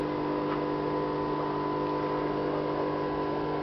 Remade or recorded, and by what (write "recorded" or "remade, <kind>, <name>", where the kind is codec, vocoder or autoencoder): recorded